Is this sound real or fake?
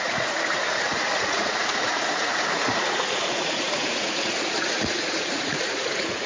fake